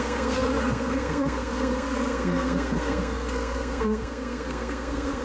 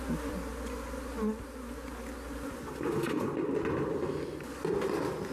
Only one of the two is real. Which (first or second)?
second